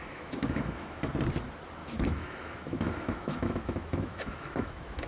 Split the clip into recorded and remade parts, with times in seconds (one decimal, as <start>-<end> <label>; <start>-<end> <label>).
0.0-1.0 remade; 1.0-1.8 recorded; 1.8-5.1 remade